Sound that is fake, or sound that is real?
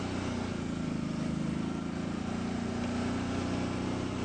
real